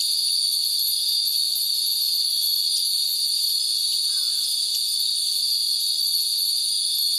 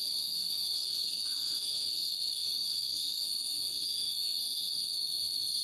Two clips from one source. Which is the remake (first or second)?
second